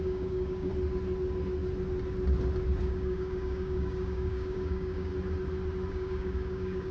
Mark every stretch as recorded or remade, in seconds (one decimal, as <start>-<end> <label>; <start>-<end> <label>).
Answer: 0.0-0.7 remade; 0.7-2.8 recorded; 2.8-5.1 remade; 5.1-5.9 recorded; 5.9-6.9 remade